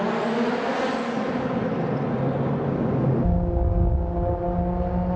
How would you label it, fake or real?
real